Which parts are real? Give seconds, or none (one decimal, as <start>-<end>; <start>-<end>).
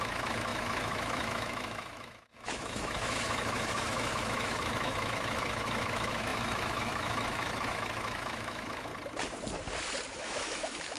8.9-10.1